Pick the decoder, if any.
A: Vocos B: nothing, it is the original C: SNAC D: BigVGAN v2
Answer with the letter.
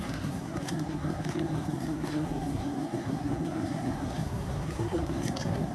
C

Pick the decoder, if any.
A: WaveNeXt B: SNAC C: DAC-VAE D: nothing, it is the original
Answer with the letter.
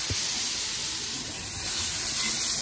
D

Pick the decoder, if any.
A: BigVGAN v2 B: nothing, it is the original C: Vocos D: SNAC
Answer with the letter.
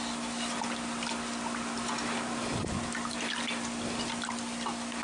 B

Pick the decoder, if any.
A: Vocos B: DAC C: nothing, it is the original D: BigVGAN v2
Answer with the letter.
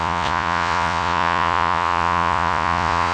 A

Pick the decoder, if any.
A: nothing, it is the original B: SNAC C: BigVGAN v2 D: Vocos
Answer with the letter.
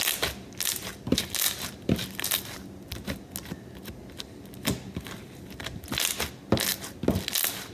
A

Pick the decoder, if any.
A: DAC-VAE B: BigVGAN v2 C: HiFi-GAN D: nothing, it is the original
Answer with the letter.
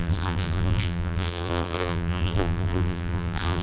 B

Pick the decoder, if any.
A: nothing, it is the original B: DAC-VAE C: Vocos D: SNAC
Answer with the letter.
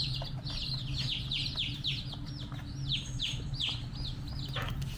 A